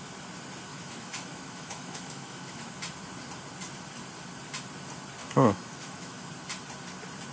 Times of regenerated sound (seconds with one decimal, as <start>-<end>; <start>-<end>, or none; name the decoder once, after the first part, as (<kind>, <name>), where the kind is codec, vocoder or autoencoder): 0.7-2.7 (autoencoder, DAC-VAE); 5.2-6.3